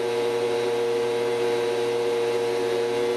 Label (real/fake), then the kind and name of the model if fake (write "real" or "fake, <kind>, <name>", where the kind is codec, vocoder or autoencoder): real